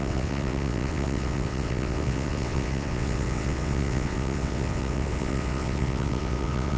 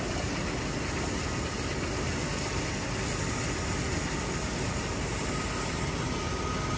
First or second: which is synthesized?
first